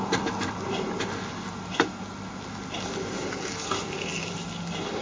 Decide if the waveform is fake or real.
real